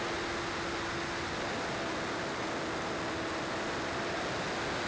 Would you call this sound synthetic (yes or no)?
no